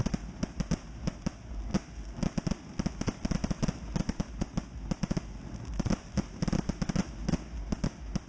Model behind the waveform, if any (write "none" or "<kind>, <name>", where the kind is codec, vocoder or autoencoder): none